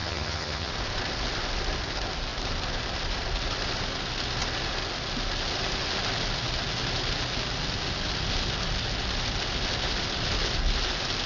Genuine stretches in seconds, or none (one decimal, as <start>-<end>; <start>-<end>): 0.7-11.3